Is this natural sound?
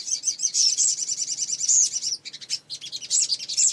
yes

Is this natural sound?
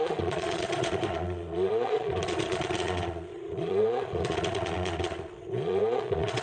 no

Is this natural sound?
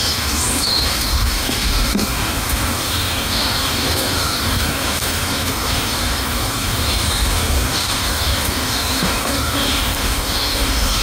no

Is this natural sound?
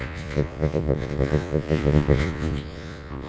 no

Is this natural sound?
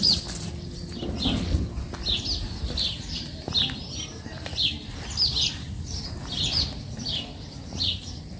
yes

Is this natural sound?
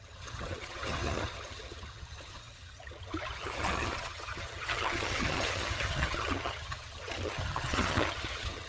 no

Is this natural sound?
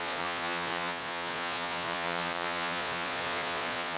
no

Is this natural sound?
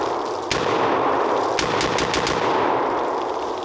yes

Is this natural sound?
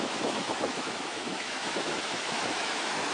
no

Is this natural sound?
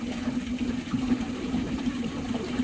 no